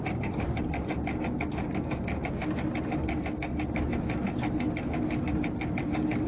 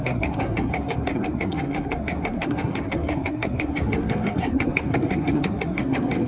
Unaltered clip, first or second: first